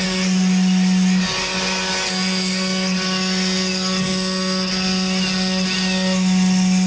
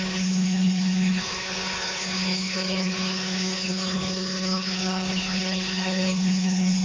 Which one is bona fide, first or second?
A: first